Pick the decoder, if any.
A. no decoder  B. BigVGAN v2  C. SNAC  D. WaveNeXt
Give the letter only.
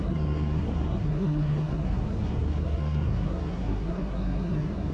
C